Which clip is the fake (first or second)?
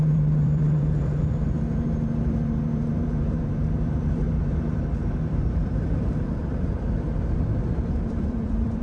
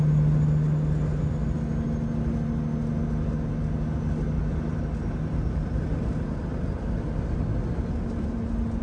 first